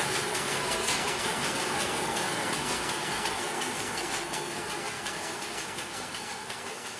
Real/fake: fake